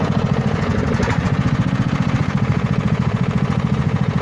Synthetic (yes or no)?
yes